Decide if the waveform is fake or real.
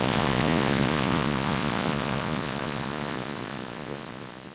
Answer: fake